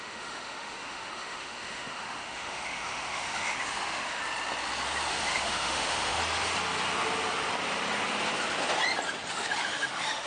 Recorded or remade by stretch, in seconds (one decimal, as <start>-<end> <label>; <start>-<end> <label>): 0.0-4.2 remade; 4.2-5.1 recorded; 5.1-6.2 remade; 6.2-9.3 recorded; 9.3-10.3 remade